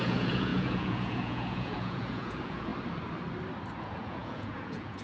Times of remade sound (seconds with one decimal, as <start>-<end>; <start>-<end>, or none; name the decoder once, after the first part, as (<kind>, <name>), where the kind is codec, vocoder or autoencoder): 0.0-2.7 (vocoder, Vocos); 3.8-5.0